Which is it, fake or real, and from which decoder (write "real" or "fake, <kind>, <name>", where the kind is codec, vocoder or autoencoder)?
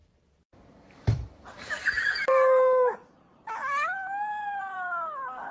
fake, vocoder, BigVGAN v2